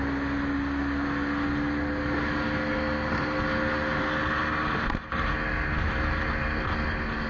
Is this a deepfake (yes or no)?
no